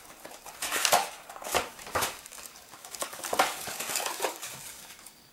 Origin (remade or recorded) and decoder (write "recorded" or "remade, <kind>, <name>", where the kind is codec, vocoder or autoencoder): remade, codec, DAC